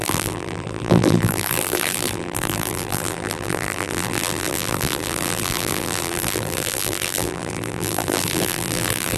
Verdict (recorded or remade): remade